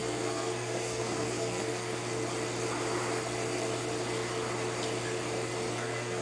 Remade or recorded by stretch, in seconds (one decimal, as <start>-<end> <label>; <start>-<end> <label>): 0.0-2.0 remade; 2.0-5.7 recorded; 5.7-6.2 remade